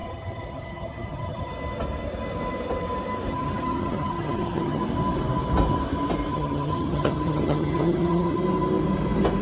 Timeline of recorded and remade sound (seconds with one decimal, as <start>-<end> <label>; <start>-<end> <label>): 0.0-1.5 remade; 1.5-3.3 recorded; 3.3-4.8 remade; 4.8-6.3 recorded; 6.3-8.4 remade; 8.4-9.4 recorded